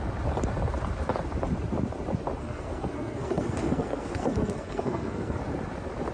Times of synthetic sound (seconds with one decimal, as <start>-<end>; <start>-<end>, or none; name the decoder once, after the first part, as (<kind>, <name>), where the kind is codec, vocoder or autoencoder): 2.4-5.4 (codec, SNAC)